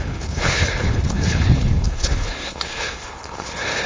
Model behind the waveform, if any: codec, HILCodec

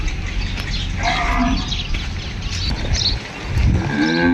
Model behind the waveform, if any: none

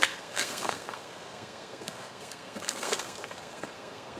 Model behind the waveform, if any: codec, SNAC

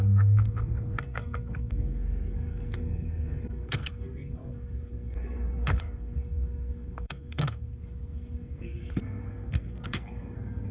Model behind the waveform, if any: codec, SNAC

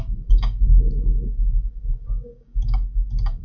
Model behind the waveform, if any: codec, DAC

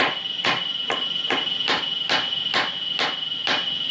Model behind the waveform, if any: none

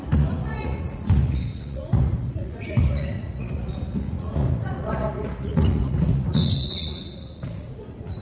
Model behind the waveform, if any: vocoder, Vocos